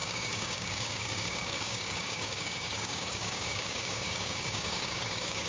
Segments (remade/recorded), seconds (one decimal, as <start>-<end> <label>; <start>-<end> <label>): 0.0-5.5 remade

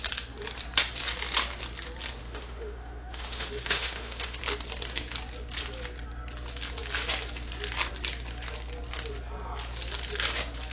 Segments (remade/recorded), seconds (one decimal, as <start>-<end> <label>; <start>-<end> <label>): 0.0-2.2 recorded; 2.2-4.4 remade; 4.4-10.7 recorded

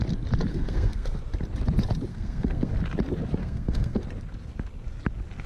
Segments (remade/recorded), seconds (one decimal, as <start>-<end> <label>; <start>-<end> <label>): 0.0-0.5 recorded; 0.5-1.2 remade; 1.2-2.1 recorded; 2.1-2.7 remade; 2.7-3.4 recorded; 3.4-4.0 remade; 4.0-5.5 recorded

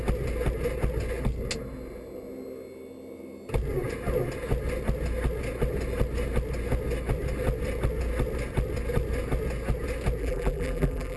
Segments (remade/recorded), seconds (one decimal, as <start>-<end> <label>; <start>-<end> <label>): 0.0-10.2 recorded; 10.2-11.2 remade

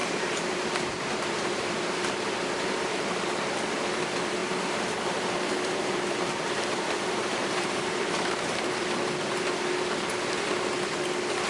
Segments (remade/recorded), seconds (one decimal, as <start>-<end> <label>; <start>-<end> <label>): 0.0-3.1 remade; 3.1-4.4 recorded; 4.4-8.7 remade; 8.7-11.5 recorded

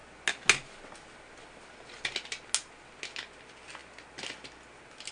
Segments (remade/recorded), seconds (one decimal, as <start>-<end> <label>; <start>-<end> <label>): 0.0-5.1 recorded

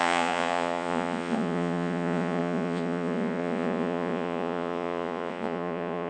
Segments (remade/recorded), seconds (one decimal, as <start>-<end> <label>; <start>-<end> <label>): 0.0-6.1 remade